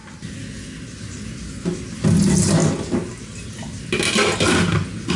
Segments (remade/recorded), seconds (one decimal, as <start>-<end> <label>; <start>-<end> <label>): 0.0-5.2 recorded